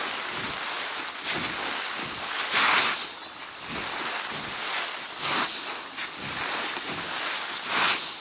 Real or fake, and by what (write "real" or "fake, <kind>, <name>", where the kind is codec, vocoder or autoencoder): real